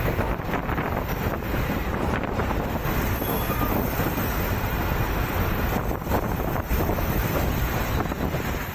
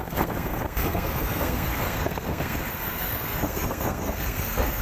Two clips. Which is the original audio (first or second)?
first